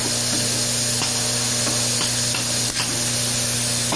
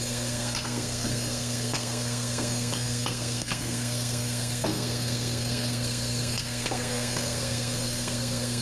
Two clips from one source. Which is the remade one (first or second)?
second